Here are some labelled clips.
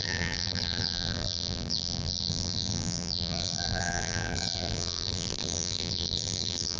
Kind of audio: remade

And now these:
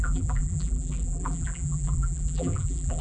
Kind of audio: remade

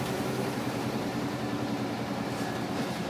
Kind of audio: remade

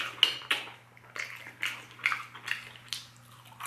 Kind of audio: recorded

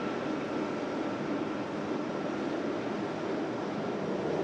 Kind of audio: recorded